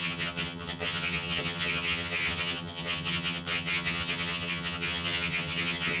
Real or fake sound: fake